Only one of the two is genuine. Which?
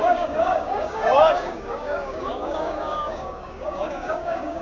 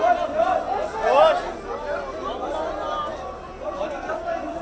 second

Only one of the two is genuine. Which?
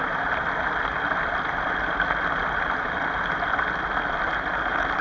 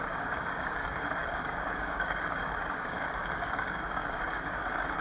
first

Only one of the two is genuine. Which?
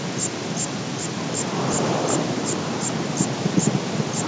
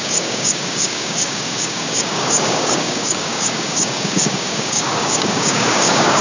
first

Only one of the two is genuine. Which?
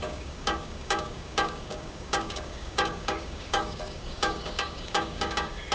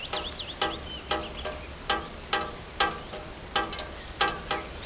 second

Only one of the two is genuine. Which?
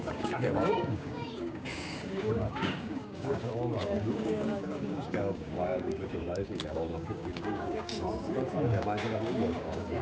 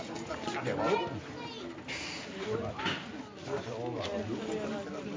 second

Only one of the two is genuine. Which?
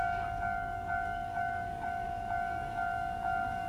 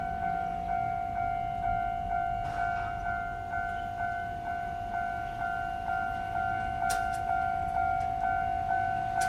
second